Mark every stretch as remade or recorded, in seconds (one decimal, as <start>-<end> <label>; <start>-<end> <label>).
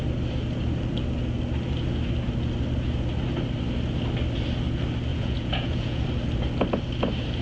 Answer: 0.0-5.1 recorded; 5.1-6.0 remade; 6.0-7.4 recorded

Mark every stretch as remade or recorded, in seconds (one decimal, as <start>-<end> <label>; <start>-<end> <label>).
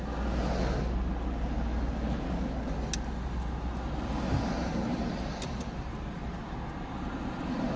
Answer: 0.0-7.8 recorded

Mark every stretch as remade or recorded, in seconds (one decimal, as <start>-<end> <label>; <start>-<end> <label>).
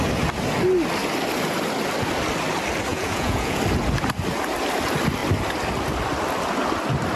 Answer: 0.0-2.9 recorded; 2.9-3.6 remade; 3.6-7.2 recorded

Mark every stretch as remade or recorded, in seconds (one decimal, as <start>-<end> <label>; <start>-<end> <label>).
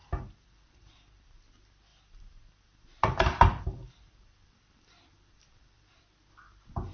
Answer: 0.0-1.3 remade; 1.3-1.9 recorded; 1.9-6.0 remade; 6.0-6.9 recorded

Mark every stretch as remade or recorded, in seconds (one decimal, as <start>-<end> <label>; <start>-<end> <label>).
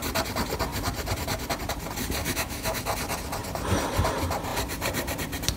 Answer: 0.0-2.2 recorded; 2.2-2.8 remade; 2.8-5.6 recorded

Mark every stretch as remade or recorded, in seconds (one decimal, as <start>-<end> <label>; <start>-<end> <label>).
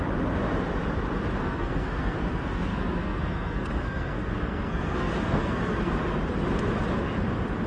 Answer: 0.0-1.4 recorded; 1.4-5.9 remade; 5.9-7.7 recorded